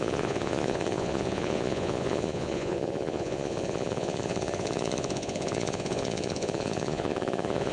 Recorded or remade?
remade